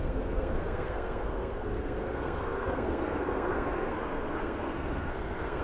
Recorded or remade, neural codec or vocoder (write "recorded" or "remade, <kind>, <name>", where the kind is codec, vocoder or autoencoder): remade, codec, SNAC